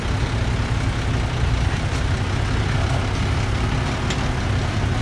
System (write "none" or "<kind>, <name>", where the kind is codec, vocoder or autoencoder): none